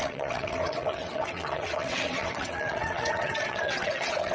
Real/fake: fake